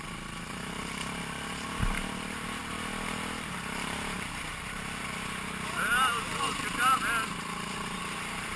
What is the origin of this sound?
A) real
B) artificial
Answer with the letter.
B